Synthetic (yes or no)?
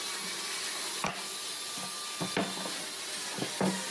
no